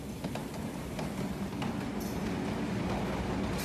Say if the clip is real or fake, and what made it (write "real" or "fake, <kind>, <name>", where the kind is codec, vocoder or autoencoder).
real